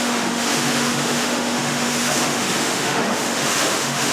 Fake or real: fake